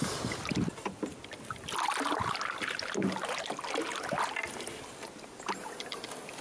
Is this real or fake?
real